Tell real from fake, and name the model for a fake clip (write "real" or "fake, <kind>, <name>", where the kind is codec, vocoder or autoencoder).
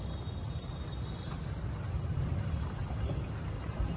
real